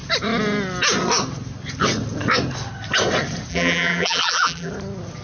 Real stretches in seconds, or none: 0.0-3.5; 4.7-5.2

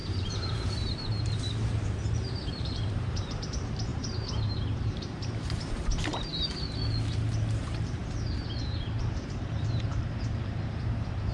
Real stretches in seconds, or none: 6.3-7.6; 8.0-9.0

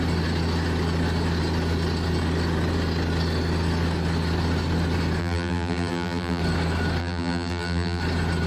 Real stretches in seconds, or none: 0.0-5.2; 6.4-7.0; 8.0-8.5

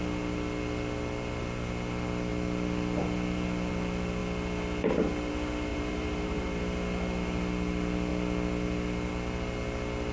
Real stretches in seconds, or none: 0.0-5.7; 6.6-10.1

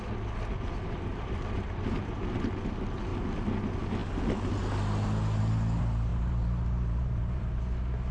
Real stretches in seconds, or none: 0.0-1.1; 2.5-6.1; 7.6-8.1

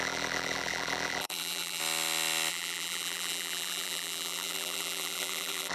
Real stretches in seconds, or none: 1.8-2.5

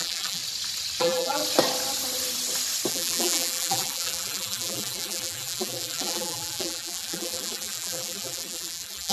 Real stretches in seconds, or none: 0.4-1.0; 1.4-2.9